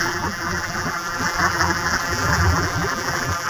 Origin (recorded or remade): remade